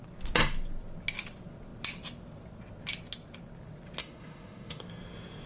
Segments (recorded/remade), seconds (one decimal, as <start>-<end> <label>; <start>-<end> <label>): 0.0-4.0 recorded; 4.0-4.8 remade; 4.8-5.5 recorded